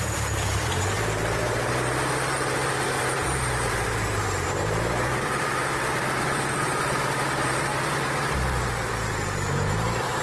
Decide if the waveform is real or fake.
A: fake